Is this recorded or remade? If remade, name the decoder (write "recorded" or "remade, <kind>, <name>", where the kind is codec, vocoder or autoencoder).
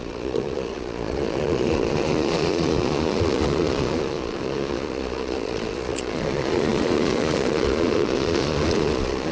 remade, vocoder, Vocos